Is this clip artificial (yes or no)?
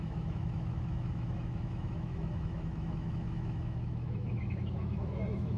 yes